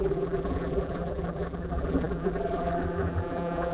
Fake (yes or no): yes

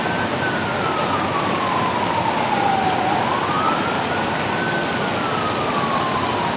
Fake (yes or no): no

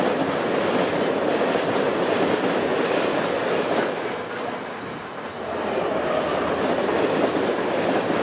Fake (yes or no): no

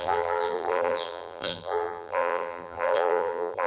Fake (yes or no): yes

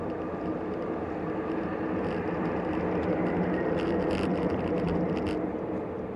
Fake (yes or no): no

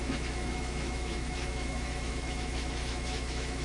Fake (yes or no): yes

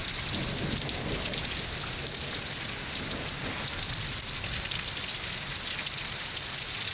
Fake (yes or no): yes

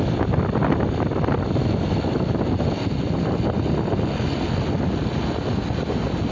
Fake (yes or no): no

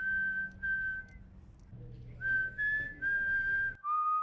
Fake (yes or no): no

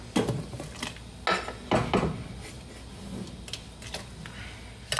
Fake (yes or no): no